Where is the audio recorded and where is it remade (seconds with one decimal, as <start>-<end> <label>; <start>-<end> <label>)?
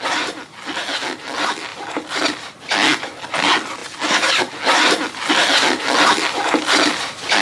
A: 0.0-7.4 recorded